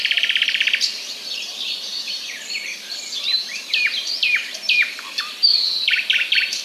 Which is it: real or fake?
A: fake